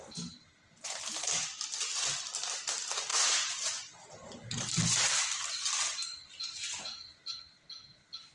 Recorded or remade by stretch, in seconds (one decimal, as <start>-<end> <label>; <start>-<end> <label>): 0.0-3.1 recorded; 3.1-5.4 remade; 5.4-8.3 recorded